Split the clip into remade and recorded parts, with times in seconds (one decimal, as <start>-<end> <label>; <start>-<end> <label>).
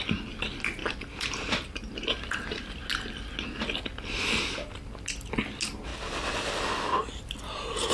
0.0-7.9 recorded